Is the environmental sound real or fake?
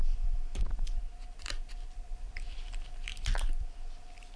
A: fake